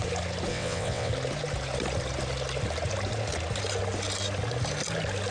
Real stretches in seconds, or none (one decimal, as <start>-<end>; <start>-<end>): 0.0-0.5; 1.1-5.3